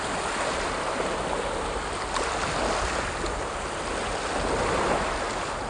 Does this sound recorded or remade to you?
recorded